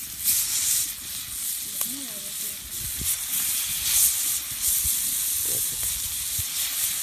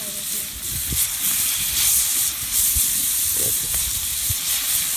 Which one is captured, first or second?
first